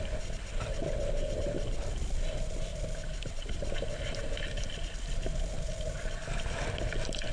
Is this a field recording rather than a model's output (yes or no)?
yes